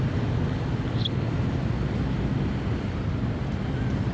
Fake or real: real